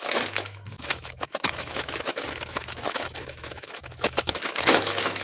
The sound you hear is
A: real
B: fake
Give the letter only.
B